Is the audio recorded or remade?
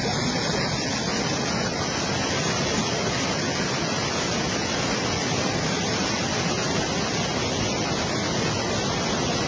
recorded